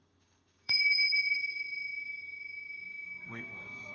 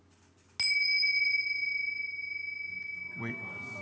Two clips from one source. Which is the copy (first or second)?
first